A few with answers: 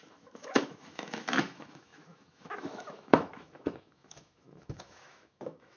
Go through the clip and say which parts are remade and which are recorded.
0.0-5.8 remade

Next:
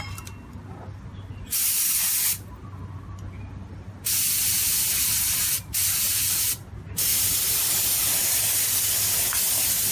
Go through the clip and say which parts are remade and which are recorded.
0.0-9.9 recorded

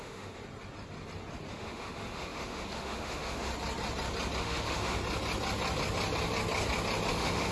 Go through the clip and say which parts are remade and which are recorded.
0.0-0.4 remade; 0.4-1.5 recorded; 1.5-3.5 remade; 3.5-4.4 recorded; 4.4-5.0 remade; 5.0-7.1 recorded; 7.1-7.5 remade

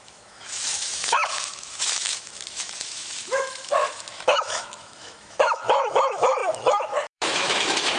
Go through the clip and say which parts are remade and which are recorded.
0.0-8.0 remade

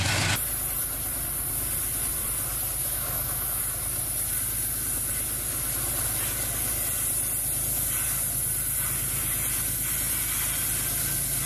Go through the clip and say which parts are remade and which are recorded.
0.0-2.8 recorded; 2.8-3.6 remade; 3.6-11.5 recorded

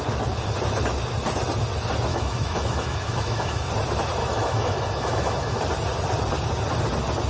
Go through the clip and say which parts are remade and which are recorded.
0.0-2.1 recorded; 2.1-3.7 remade; 3.7-4.2 recorded; 4.2-5.6 remade; 5.6-7.3 recorded